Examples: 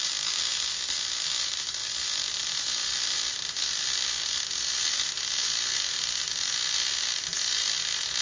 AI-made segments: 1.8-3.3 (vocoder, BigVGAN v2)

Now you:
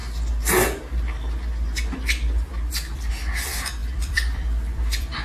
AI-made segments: 3.8-5.2 (vocoder, BigVGAN v2)

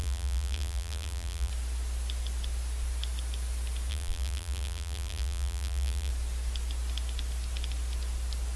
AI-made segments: 0.0-1.5 (vocoder, BigVGAN v2); 3.9-6.1